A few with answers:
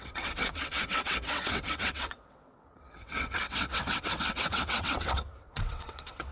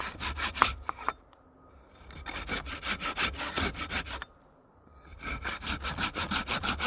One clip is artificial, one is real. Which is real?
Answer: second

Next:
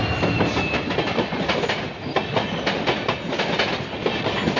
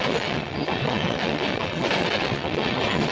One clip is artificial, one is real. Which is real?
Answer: first